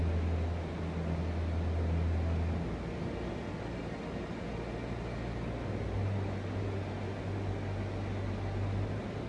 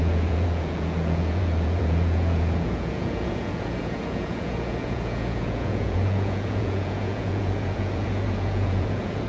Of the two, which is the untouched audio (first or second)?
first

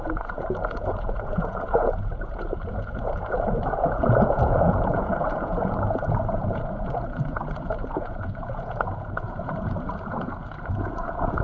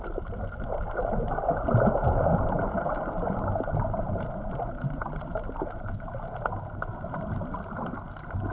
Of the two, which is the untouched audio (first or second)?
second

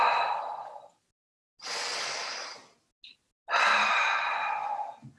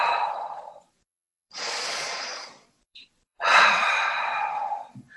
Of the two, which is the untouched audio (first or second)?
first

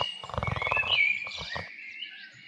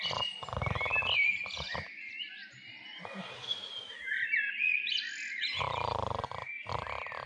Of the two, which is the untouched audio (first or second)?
second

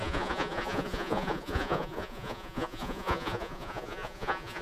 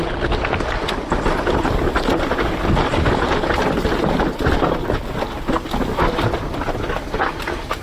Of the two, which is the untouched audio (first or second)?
second